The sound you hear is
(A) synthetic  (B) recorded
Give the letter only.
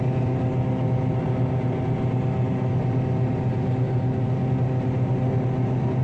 B